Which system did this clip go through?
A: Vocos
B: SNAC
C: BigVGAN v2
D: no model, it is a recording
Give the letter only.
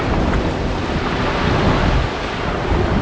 D